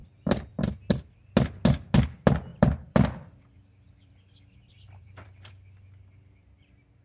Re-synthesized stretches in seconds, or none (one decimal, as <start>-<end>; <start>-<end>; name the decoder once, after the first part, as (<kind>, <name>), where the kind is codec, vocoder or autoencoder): 0.0-0.5 (vocoder, BigVGAN v2); 2.5-5.5